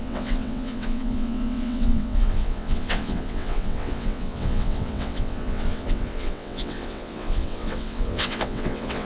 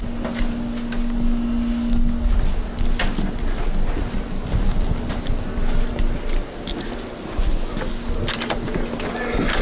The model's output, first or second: first